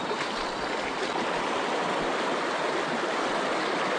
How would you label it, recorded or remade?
recorded